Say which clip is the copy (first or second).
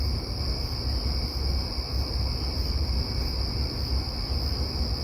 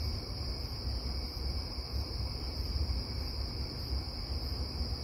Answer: second